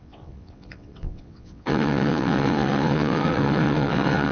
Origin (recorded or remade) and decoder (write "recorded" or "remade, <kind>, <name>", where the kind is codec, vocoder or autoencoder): remade, vocoder, WaveNeXt